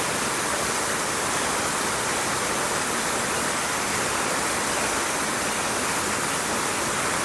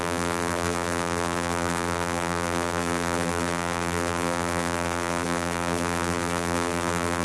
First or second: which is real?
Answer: first